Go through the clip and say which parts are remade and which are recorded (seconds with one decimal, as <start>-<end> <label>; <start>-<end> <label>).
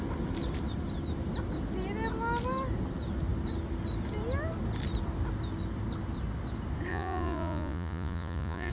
0.0-6.9 recorded; 6.9-8.7 remade